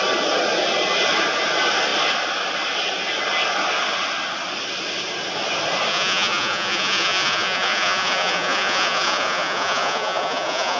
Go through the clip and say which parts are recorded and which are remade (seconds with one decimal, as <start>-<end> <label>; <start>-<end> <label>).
0.0-5.9 recorded; 5.9-10.8 remade